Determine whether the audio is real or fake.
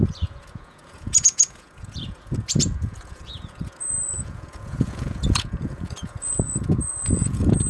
fake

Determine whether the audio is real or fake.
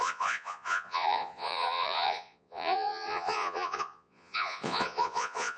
fake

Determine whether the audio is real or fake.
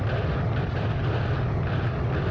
real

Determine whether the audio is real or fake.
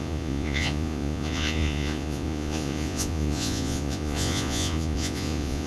fake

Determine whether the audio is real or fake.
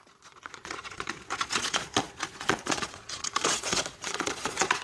fake